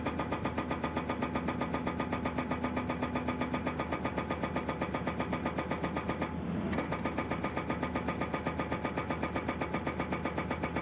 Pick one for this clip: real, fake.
real